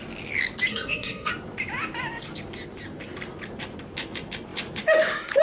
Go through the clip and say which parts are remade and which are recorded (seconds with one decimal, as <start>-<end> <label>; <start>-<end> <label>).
0.0-0.7 recorded; 0.7-1.3 remade; 1.3-5.4 recorded